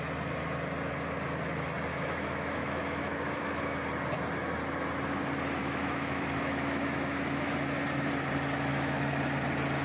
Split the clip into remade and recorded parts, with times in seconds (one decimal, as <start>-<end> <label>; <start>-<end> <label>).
0.0-1.9 recorded; 1.9-3.6 remade; 3.6-5.6 recorded; 5.6-7.5 remade; 7.5-8.7 recorded; 8.7-9.2 remade; 9.2-9.8 recorded